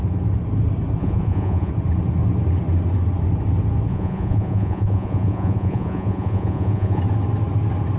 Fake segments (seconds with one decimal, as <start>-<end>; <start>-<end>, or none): 1.0-1.7; 3.9-7.0